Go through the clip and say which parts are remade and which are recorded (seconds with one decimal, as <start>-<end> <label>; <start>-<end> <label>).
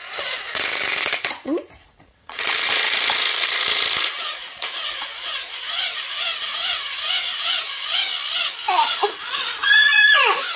0.0-8.1 remade; 8.1-8.6 recorded; 8.6-10.6 remade